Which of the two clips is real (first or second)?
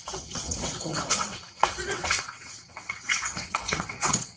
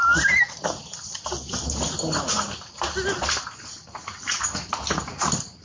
second